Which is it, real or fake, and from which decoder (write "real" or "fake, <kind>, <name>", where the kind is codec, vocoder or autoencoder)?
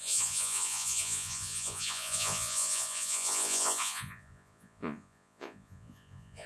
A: fake, vocoder, Vocos